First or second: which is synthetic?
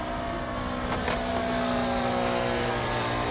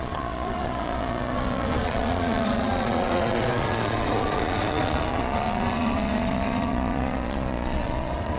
second